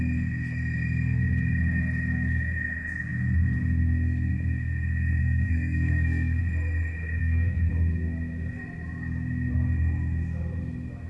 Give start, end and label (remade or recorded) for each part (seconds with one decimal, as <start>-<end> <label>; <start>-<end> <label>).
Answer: 0.0-5.2 recorded; 5.2-6.4 remade; 6.4-7.2 recorded; 7.2-7.7 remade; 7.7-11.1 recorded